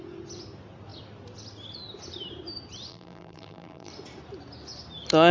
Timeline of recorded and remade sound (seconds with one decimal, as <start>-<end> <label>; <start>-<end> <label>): 0.0-2.9 recorded; 2.9-3.9 remade; 3.9-5.3 recorded